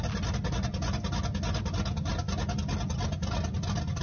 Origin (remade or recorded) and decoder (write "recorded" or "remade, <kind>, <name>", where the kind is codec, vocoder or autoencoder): recorded